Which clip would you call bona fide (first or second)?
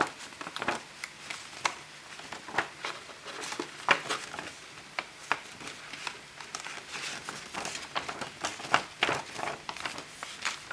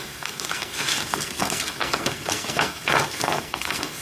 first